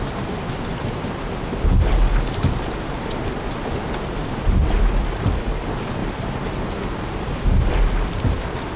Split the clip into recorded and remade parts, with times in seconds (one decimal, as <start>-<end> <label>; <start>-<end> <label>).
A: 0.0-6.0 remade; 6.0-7.2 recorded; 7.2-8.8 remade

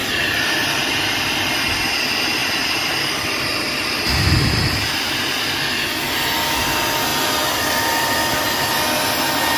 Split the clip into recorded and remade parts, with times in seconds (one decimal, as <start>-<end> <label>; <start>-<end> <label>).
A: 0.0-0.5 remade; 0.5-2.4 recorded; 2.4-5.1 remade; 5.1-9.6 recorded

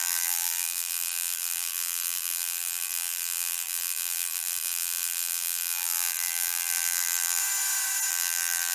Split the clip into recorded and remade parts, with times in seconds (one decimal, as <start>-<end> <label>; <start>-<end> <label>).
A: 0.0-7.4 remade; 7.4-8.1 recorded; 8.1-8.7 remade

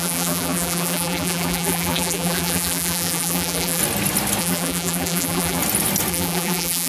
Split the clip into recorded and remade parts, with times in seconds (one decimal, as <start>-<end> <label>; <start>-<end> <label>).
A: 0.0-3.8 remade; 3.8-4.4 recorded; 4.4-5.6 remade; 5.6-6.1 recorded; 6.1-6.9 remade